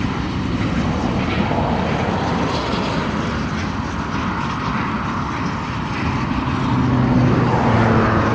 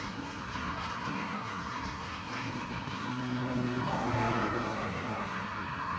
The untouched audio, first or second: first